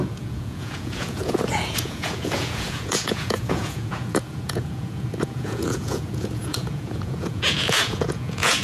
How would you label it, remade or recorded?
remade